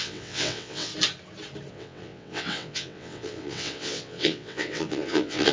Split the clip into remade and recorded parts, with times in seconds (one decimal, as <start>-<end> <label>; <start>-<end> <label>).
0.0-0.9 remade; 0.9-1.7 recorded; 1.7-5.5 remade